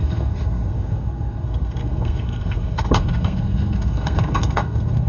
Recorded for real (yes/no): no